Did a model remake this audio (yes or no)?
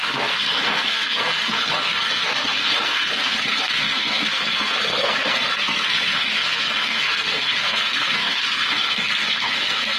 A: yes